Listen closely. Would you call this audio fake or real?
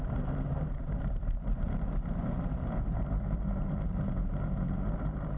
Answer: fake